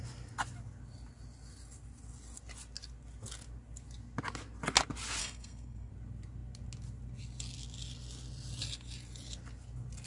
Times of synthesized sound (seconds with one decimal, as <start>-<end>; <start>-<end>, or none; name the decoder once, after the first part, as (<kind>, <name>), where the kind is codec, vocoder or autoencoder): 5.2-5.9 (codec, SNAC)

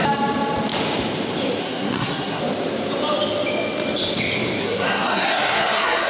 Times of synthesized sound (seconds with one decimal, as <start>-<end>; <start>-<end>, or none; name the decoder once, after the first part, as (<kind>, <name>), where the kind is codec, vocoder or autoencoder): 1.6-2.4 (codec, SNAC); 4.6-6.1

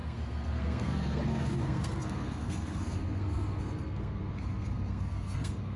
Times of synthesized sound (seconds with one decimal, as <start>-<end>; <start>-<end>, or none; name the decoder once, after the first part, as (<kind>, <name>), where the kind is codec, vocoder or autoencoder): 0.0-5.8 (codec, SNAC)